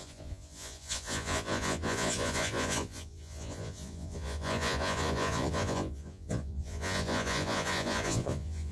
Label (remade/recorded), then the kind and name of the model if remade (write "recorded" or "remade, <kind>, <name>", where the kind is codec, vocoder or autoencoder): remade, vocoder, Vocos